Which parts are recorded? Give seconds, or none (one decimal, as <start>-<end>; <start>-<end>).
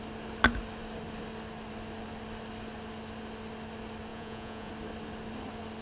0.0-4.1; 4.7-5.8